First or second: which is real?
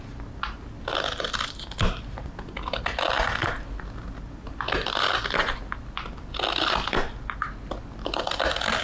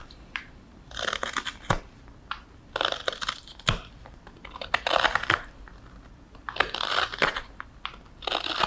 first